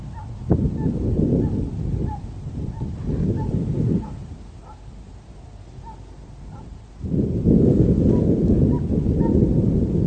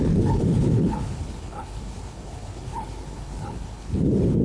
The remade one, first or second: second